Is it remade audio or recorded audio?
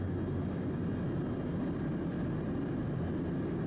recorded